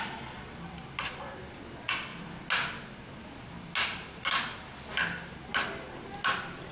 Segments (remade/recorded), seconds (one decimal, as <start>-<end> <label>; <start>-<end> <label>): 0.0-6.7 recorded

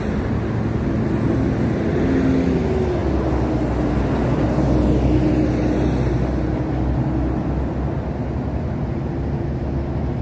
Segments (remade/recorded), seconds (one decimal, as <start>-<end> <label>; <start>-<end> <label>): 0.0-10.2 recorded